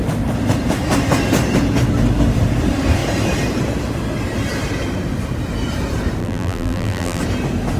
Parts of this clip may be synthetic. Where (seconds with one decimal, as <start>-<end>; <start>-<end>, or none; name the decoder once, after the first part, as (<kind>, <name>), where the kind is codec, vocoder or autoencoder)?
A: 6.2-7.2 (vocoder, BigVGAN v2)